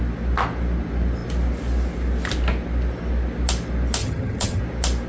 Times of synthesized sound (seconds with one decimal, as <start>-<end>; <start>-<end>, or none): 4.0-4.6